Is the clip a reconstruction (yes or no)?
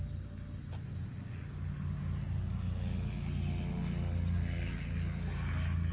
no